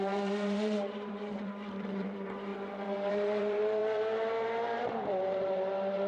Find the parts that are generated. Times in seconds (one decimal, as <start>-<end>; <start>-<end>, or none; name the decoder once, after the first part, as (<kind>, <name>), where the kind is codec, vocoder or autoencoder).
0.0-6.1 (vocoder, BigVGAN v2)